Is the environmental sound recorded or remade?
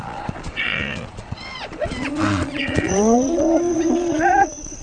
remade